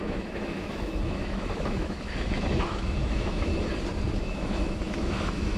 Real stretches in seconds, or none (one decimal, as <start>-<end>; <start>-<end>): 3.5-4.1